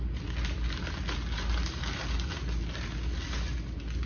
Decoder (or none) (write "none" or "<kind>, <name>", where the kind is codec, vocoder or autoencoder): none